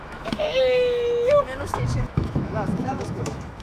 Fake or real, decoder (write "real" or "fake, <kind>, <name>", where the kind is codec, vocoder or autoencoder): fake, autoencoder, DAC-VAE